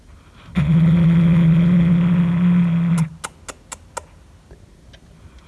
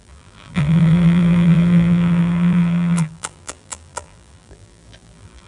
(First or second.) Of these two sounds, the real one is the first